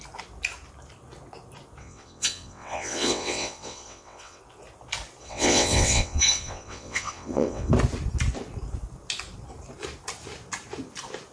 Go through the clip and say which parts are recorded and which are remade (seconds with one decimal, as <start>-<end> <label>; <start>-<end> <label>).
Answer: 0.0-1.8 recorded; 1.8-4.4 remade; 4.4-5.2 recorded; 5.2-7.7 remade; 7.7-11.3 recorded